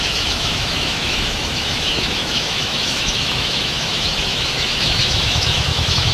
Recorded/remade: remade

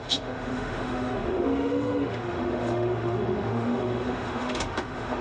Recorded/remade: remade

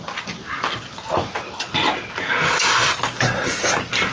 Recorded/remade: recorded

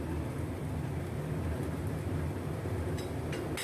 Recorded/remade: recorded